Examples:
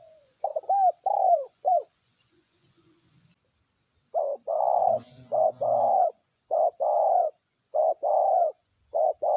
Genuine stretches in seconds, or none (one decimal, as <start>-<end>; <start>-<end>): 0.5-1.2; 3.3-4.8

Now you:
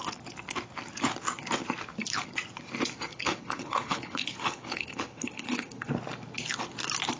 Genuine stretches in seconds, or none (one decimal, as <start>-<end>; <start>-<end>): 0.0-3.1; 5.9-7.2

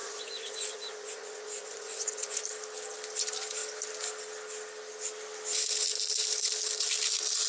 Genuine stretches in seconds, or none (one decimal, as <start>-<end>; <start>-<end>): 2.4-7.5